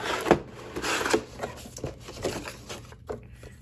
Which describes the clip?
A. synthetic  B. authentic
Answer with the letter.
B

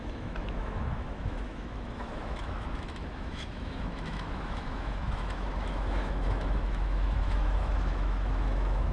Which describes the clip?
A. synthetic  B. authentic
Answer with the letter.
A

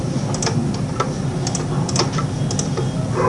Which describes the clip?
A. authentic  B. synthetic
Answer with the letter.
A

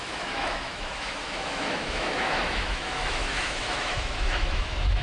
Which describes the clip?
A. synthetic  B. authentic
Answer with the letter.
A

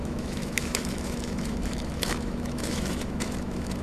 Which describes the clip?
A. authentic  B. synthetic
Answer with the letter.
B